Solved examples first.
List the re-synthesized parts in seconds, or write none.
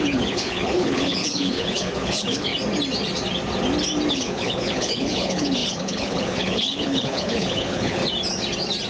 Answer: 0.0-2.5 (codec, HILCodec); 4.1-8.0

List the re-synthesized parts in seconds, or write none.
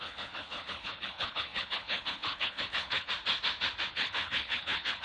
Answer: 0.0-3.1 (codec, HILCodec); 3.9-5.0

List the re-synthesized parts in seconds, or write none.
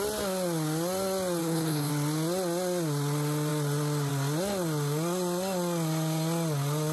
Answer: 1.4-1.9 (codec, HILCodec)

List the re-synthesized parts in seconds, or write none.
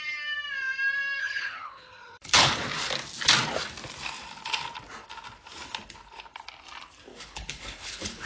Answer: 1.2-2.5 (codec, HILCodec); 7.1-8.3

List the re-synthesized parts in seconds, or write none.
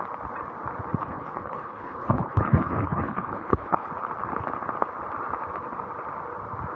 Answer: 1.0-3.9 (codec, HILCodec)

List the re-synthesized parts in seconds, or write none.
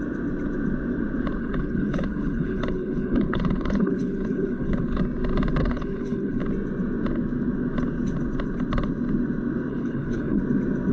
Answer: 1.4-5.0 (codec, HILCodec); 5.6-6.4; 9.7-10.4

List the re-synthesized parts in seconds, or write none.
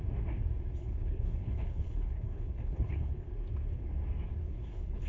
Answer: 0.8-3.3 (codec, HILCodec); 4.4-5.1